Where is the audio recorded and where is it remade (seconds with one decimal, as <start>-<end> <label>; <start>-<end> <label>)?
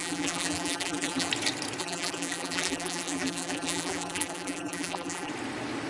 0.0-1.3 remade; 1.3-1.8 recorded; 1.8-5.3 remade; 5.3-5.9 recorded